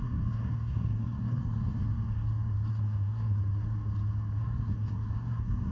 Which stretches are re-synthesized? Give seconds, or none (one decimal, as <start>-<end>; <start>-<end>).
0.0-1.9; 2.7-3.4; 4.4-5.7